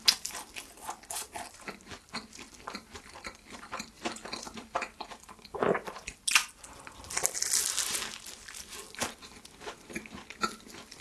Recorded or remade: recorded